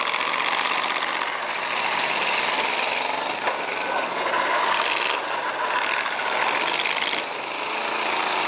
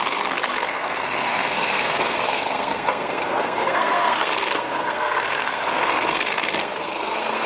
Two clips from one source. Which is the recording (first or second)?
first